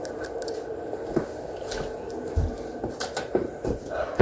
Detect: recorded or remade recorded